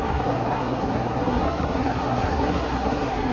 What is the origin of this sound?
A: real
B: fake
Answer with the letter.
B